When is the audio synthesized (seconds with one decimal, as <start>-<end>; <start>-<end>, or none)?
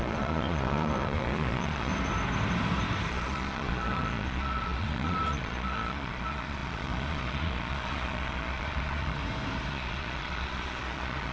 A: 0.0-1.9; 3.1-9.2; 9.7-11.3